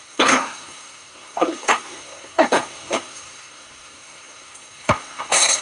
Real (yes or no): no